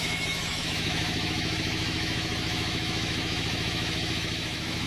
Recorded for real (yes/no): no